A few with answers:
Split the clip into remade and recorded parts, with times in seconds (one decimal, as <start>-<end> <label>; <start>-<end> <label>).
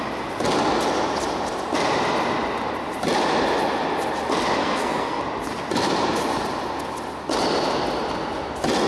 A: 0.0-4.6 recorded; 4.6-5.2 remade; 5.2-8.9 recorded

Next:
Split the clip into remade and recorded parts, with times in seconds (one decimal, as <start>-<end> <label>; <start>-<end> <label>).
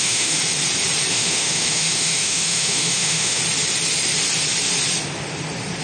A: 0.0-0.4 remade; 0.4-1.1 recorded; 1.1-3.4 remade; 3.4-5.8 recorded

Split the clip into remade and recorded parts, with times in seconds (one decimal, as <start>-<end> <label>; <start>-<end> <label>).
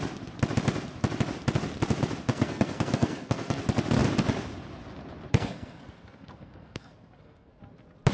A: 0.0-2.3 recorded; 2.3-3.6 remade; 3.6-5.3 recorded; 5.3-7.6 remade; 7.6-8.1 recorded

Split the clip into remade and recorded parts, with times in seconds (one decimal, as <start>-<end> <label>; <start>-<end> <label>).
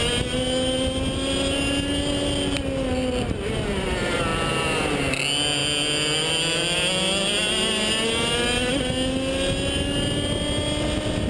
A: 0.0-11.3 recorded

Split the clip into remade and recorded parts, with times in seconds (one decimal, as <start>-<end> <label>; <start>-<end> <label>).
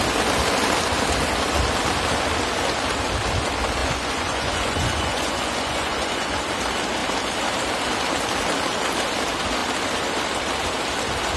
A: 0.0-3.8 recorded; 3.8-6.4 remade; 6.4-11.4 recorded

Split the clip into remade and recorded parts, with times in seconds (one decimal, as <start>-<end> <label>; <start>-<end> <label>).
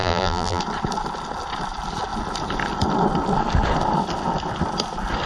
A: 0.0-0.6 remade; 0.6-5.3 recorded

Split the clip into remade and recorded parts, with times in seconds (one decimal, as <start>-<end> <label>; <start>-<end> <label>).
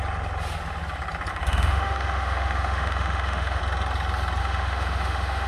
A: 0.0-1.3 recorded; 1.3-3.6 remade; 3.6-4.4 recorded; 4.4-5.5 remade